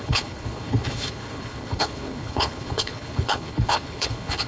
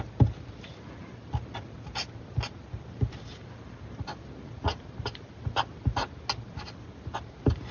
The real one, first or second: second